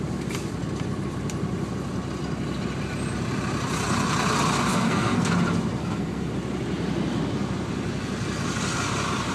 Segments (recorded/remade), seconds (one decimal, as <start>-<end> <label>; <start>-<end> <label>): 0.0-4.7 recorded; 4.7-5.3 remade; 5.3-5.8 recorded; 5.8-6.3 remade; 6.3-9.3 recorded